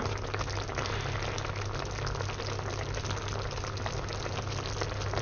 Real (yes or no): yes